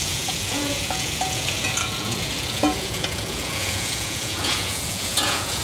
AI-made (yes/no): yes